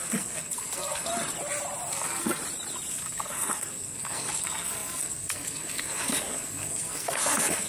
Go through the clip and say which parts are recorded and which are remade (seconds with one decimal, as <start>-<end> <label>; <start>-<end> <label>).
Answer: 0.0-1.1 remade; 1.1-1.9 recorded; 1.9-2.4 remade; 2.4-2.9 recorded; 2.9-7.7 remade